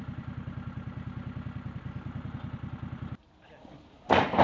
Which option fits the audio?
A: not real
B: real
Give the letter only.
B